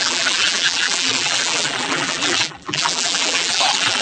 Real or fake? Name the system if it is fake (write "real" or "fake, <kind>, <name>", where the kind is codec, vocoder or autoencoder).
fake, vocoder, BigVGAN v2